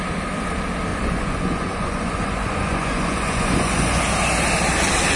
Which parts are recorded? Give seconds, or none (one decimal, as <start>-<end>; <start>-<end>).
0.0-0.9; 4.0-5.2